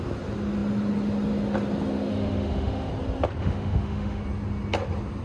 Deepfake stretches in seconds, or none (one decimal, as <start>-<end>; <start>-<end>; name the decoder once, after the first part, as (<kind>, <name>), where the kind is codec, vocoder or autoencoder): 2.1-2.9 (autoencoder, DAC-VAE); 3.4-4.2

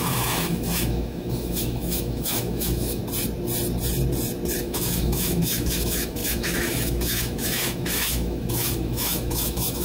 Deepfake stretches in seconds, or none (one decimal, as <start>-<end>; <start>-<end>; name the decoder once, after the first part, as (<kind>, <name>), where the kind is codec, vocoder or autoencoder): 0.0-3.0 (autoencoder, DAC-VAE); 4.6-9.8

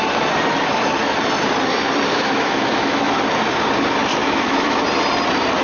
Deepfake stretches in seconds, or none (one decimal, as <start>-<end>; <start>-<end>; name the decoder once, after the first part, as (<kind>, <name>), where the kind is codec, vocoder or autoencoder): 2.1-3.2 (autoencoder, DAC-VAE); 4.2-4.8

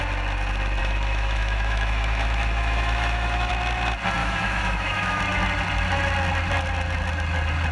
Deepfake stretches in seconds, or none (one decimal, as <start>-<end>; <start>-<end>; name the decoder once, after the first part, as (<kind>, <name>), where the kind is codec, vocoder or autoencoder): 0.8-3.5 (autoencoder, DAC-VAE); 4.2-5.2

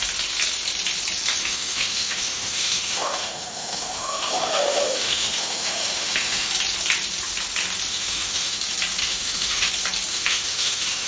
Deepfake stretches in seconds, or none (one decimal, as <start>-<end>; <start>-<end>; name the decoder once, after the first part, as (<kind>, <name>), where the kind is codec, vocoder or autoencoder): 1.4-6.5 (autoencoder, DAC-VAE); 7.9-8.6; 9.0-9.7; 10.1-11.1